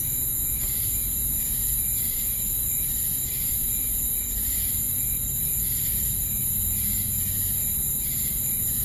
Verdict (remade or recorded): remade